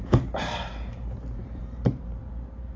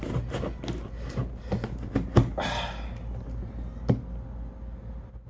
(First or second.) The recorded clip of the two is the second